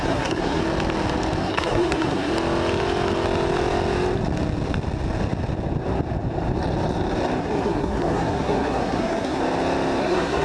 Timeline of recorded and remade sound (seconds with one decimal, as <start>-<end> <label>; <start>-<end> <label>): 0.0-0.6 remade; 0.6-1.4 recorded; 1.4-2.3 remade; 2.3-7.4 recorded; 7.4-9.4 remade; 9.4-10.0 recorded; 10.0-10.4 remade